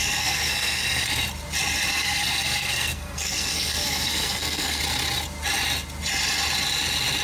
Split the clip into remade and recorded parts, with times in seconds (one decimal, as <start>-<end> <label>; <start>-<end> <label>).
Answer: 0.0-1.1 remade; 1.1-1.9 recorded; 1.9-4.8 remade; 4.8-7.2 recorded